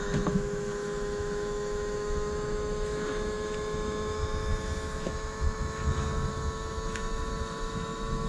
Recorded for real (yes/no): no